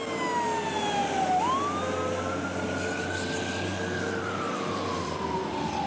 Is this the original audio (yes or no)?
yes